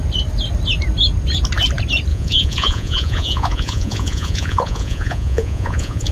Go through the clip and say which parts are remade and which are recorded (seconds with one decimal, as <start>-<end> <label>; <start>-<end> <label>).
0.0-2.1 recorded; 2.1-6.1 remade